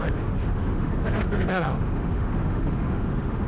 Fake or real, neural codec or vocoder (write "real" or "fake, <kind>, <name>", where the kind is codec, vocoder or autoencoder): fake, autoencoder, DAC-VAE